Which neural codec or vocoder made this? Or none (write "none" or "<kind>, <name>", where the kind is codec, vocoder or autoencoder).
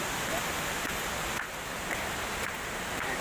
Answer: none